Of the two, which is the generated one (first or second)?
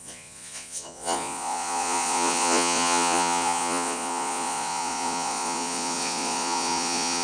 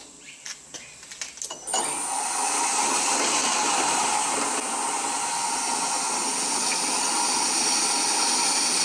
first